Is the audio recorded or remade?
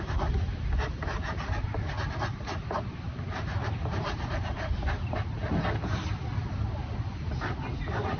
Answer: recorded